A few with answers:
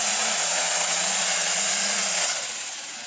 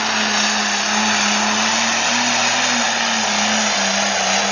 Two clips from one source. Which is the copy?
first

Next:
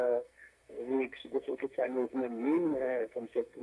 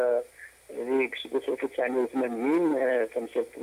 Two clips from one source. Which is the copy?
first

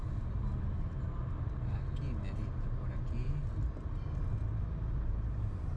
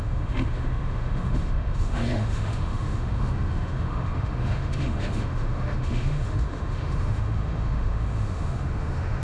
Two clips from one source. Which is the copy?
second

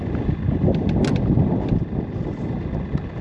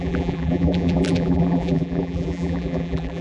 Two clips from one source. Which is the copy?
second